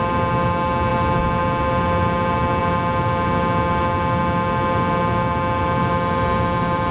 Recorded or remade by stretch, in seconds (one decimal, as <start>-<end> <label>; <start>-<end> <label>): 0.0-6.9 recorded